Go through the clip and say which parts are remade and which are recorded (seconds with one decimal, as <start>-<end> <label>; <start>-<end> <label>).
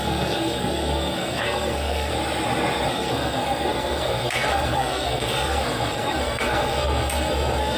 0.0-2.1 remade; 2.1-2.9 recorded; 2.9-7.8 remade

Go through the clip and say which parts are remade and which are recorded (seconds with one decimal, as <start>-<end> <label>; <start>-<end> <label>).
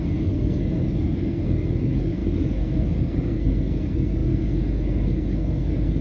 0.0-6.0 remade